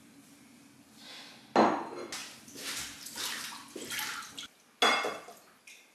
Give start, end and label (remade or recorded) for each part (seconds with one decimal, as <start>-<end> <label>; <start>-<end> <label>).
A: 0.0-5.9 recorded